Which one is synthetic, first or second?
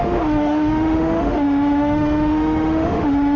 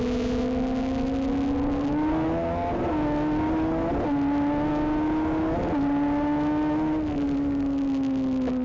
first